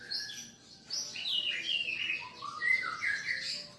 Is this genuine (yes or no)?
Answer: yes